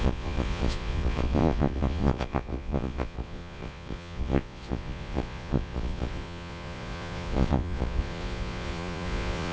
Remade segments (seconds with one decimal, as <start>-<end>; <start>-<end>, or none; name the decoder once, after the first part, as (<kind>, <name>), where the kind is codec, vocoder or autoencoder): 0.0-9.5 (vocoder, Vocos)

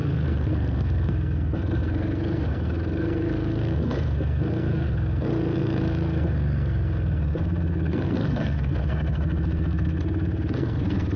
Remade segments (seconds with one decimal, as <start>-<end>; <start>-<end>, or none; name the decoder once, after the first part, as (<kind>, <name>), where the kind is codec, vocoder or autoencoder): 0.0-11.2 (codec, SNAC)

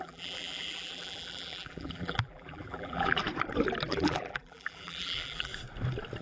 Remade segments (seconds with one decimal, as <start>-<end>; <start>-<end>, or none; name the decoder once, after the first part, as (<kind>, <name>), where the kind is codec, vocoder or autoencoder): 0.0-3.2 (vocoder, BigVGAN v2); 3.9-5.5